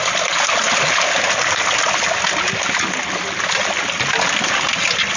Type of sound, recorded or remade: recorded